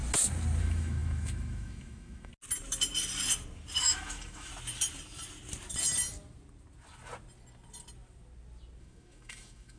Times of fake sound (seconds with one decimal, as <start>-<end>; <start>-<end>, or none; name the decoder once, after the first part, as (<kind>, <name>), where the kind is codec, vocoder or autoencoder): 0.6-2.3 (autoencoder, DAC-VAE); 3.8-4.5; 8.8-9.8